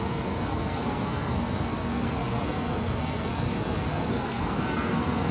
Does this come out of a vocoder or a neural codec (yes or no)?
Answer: yes